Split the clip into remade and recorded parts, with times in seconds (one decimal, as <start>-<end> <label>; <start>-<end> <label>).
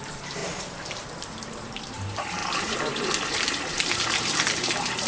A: 0.0-2.4 remade; 2.4-3.7 recorded; 3.7-5.1 remade